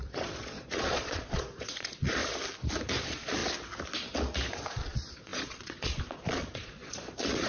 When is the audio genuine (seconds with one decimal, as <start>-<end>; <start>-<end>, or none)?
2.2-3.0; 3.4-4.5